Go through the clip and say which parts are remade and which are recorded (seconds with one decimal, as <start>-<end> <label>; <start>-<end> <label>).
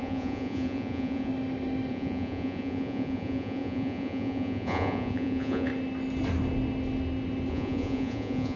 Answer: 0.0-1.3 remade; 1.3-1.9 recorded; 1.9-5.7 remade; 5.7-7.5 recorded; 7.5-8.6 remade